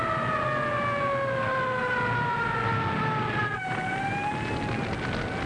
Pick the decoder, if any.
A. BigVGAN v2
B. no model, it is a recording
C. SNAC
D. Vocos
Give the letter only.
B